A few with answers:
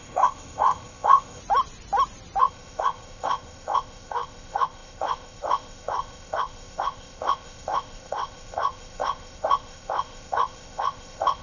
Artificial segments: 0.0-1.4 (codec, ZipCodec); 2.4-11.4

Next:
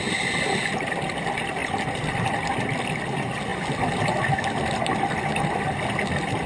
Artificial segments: none